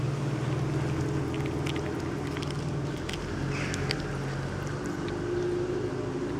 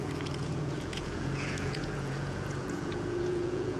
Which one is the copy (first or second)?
second